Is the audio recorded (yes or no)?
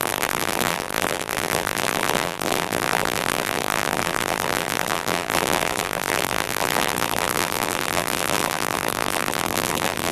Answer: no